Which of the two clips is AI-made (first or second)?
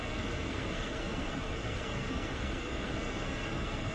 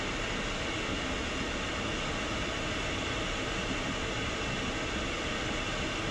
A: first